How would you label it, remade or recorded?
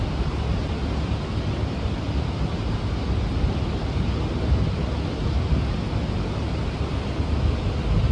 recorded